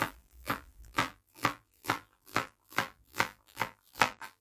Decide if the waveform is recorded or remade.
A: remade